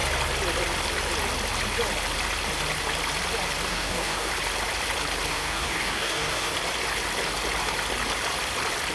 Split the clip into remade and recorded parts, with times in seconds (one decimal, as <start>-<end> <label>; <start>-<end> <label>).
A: 0.0-3.7 recorded; 3.7-4.3 remade; 4.3-5.3 recorded; 5.3-6.5 remade; 6.5-8.9 recorded

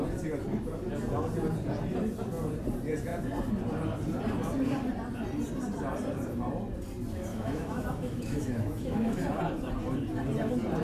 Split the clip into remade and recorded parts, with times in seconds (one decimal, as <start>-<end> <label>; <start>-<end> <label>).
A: 0.0-7.3 recorded; 7.3-9.2 remade; 9.2-10.8 recorded